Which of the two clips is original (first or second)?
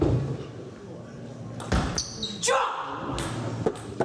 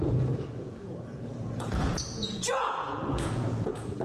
first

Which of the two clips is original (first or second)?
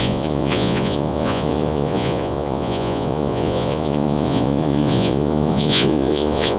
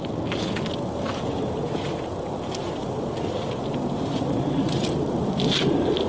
second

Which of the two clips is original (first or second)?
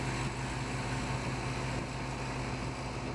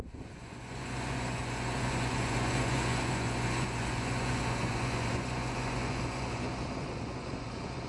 first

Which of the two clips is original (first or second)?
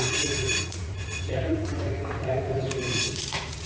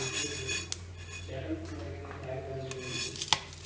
second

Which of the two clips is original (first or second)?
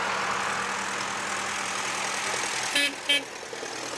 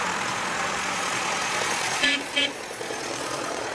first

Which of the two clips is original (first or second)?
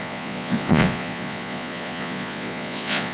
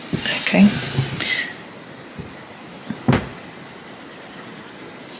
second